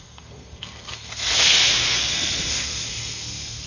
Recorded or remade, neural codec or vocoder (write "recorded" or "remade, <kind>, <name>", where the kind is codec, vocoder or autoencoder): remade, codec, SNAC